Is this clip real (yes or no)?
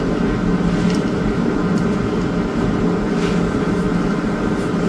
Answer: yes